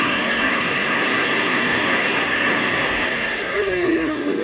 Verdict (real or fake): fake